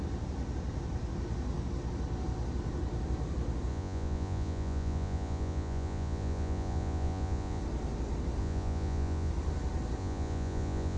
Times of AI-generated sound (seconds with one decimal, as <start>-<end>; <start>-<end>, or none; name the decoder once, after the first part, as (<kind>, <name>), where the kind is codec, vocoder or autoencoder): 3.7-7.6 (vocoder, Vocos); 8.4-9.3; 10.0-11.0